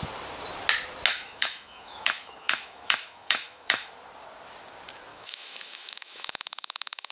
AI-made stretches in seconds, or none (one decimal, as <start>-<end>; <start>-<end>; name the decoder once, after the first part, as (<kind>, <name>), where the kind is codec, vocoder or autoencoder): 1.1-3.9 (autoencoder, DAC-VAE); 5.1-7.1